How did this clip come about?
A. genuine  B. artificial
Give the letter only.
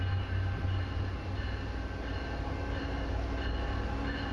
A